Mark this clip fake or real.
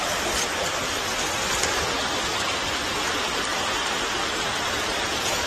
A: fake